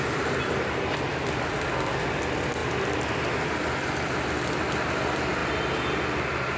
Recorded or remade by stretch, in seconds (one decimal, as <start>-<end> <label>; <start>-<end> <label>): 0.0-6.6 recorded